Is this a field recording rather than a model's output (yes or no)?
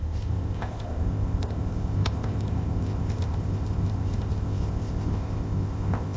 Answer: no